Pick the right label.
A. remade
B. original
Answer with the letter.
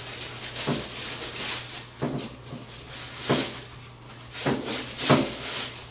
B